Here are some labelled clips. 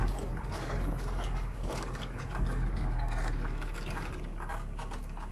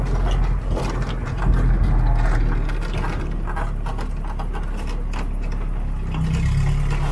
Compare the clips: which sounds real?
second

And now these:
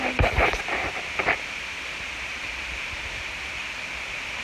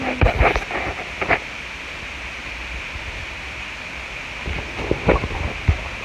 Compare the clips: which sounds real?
second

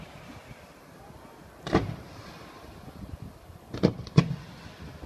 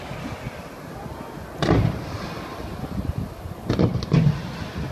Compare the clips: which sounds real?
second